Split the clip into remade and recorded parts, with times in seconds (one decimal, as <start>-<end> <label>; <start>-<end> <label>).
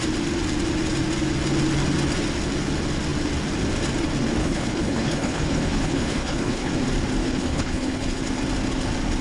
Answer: 0.0-4.4 recorded; 4.4-6.7 remade; 6.7-7.2 recorded; 7.2-8.2 remade; 8.2-9.2 recorded